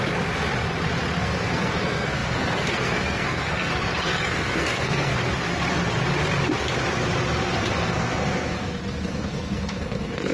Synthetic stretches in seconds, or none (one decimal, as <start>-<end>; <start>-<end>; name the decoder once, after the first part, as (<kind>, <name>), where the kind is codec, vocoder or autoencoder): 1.2-5.1 (codec, SNAC); 7.7-10.3